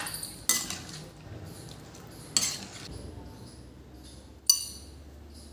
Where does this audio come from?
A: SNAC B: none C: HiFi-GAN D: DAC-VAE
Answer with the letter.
B